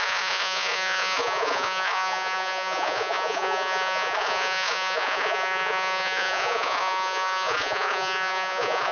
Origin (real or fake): fake